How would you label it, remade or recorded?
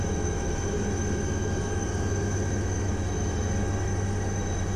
remade